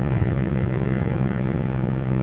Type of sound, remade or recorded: remade